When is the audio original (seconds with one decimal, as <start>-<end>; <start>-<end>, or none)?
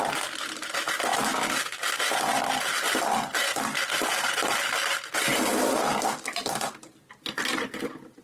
0.0-8.2